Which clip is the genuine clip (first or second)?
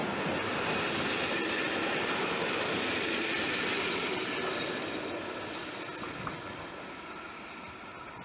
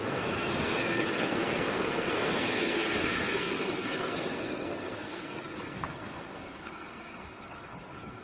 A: first